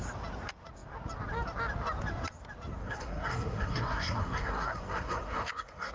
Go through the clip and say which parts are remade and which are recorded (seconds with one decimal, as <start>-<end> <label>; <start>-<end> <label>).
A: 0.0-2.8 recorded; 2.8-5.9 remade